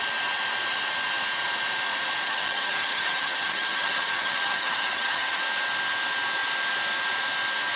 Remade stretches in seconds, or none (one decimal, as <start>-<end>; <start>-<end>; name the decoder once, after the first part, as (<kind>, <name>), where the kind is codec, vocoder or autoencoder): 2.2-5.4 (vocoder, HiFi-GAN)